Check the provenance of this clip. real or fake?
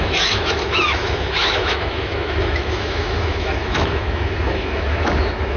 fake